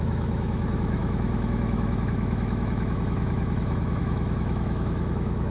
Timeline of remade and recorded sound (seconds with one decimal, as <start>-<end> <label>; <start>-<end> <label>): 0.0-5.5 remade